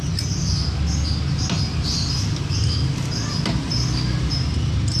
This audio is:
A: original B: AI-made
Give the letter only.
A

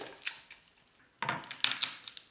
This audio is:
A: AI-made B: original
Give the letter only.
B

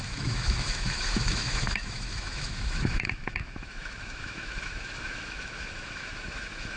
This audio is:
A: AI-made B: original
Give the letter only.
A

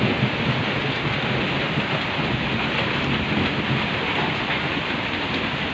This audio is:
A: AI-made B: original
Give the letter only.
B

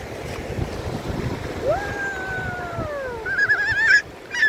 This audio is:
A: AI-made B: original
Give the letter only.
B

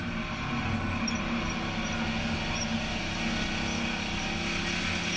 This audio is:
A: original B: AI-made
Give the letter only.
A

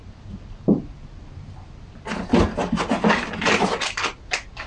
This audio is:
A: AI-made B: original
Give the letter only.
B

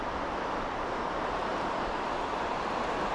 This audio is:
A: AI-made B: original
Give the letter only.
A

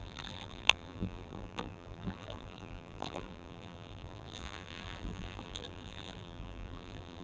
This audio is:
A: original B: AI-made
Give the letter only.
B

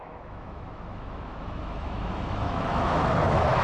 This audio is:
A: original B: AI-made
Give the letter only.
B